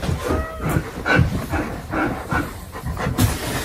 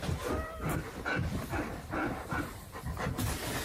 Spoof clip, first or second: second